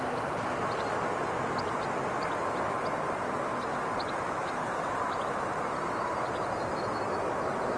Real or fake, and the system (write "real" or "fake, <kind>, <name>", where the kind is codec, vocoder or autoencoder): real